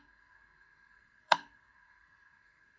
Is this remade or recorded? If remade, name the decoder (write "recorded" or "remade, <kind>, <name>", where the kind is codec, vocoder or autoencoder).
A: remade, codec, SNAC